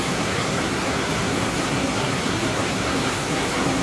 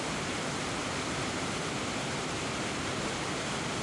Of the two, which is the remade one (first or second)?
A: first